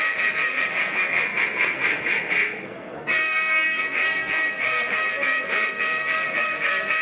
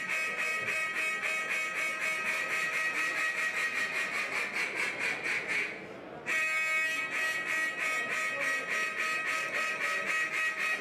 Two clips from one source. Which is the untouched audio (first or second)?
second